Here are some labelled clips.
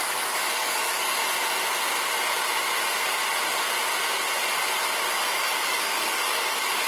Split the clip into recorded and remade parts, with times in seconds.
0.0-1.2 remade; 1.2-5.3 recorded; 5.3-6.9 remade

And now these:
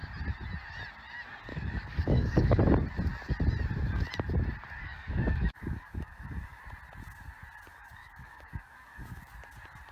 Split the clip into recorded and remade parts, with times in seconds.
0.0-1.5 recorded; 1.5-2.6 remade; 2.6-4.8 recorded; 4.8-6.6 remade; 6.6-7.7 recorded; 7.7-9.2 remade; 9.2-9.9 recorded